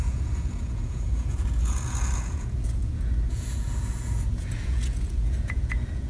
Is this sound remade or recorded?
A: remade